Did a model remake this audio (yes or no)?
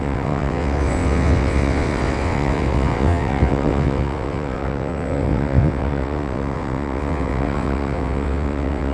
yes